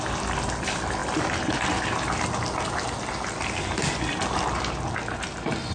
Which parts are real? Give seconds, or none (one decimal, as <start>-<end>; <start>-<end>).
0.0-5.7